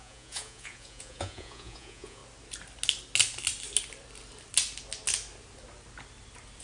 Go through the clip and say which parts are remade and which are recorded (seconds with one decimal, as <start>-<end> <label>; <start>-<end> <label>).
0.0-2.2 remade; 2.2-6.6 recorded